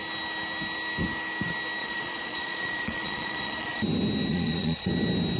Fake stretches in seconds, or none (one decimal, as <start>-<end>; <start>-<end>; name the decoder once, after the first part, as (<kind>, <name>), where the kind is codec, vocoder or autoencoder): 1.8-3.8 (vocoder, Vocos); 4.3-4.9